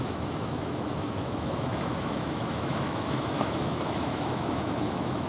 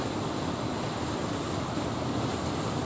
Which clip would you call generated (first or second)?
first